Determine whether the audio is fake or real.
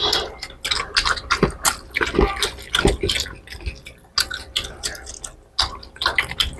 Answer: real